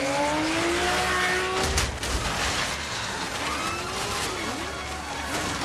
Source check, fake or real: real